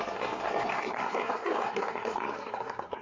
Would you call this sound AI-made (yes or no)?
yes